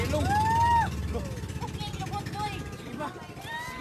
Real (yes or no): yes